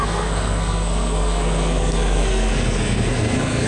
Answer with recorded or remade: remade